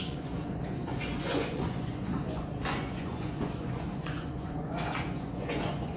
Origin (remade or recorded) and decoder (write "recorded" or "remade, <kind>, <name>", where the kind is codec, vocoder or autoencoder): remade, vocoder, Vocos